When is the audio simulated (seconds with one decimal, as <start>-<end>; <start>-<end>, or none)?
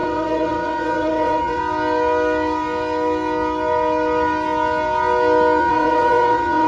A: 0.0-1.6; 5.6-6.7